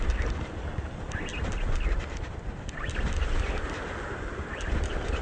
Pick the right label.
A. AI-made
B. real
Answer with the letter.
B